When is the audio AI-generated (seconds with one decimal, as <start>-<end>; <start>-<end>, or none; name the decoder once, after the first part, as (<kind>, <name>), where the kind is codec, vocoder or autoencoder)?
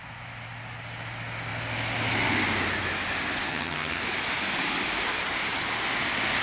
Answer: 3.5-4.0 (vocoder, HiFi-GAN)